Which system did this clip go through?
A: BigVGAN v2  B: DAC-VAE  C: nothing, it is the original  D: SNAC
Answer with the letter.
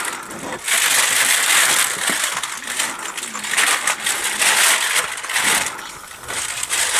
C